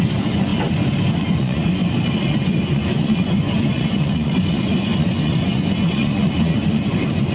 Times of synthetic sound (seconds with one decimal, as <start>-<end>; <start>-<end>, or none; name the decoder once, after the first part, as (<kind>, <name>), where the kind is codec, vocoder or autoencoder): 0.0-0.5 (vocoder, Vocos); 1.1-1.8; 2.3-7.3